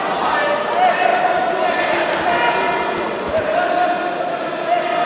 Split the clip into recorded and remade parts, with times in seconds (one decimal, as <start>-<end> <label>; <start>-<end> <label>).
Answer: 0.0-5.1 recorded